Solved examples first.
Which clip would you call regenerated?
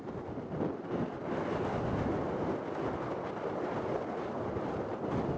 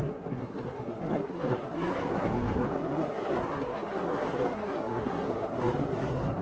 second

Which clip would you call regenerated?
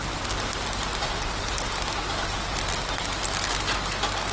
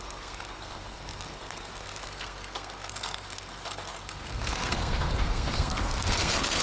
second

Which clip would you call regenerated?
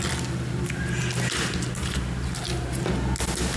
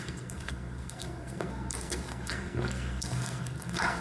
second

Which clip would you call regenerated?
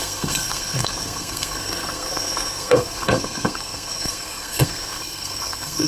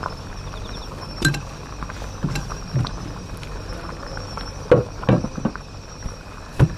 first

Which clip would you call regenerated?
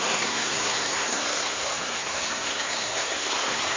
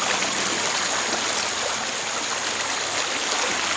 first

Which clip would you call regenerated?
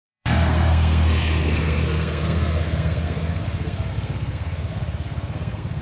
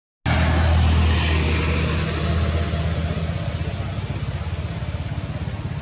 first